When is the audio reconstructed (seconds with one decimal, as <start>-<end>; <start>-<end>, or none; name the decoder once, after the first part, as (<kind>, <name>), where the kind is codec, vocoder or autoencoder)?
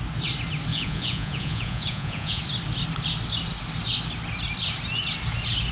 0.7-2.4 (vocoder, Vocos)